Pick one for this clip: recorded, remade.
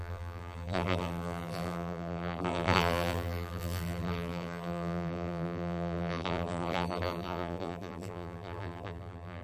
remade